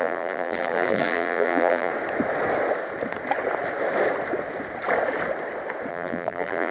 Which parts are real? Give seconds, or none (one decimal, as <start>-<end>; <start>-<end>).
1.9-5.9